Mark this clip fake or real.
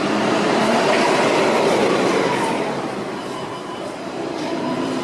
fake